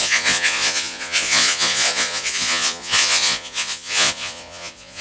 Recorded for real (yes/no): no